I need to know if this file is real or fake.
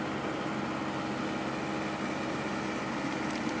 real